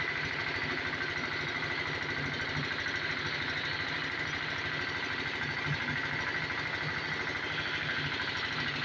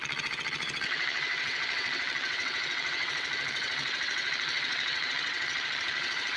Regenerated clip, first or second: second